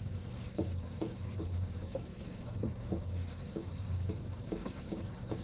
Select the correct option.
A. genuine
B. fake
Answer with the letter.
B